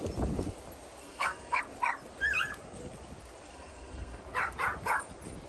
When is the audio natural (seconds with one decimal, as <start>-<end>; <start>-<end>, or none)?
0.0-1.0; 1.6-3.5; 4.2-5.5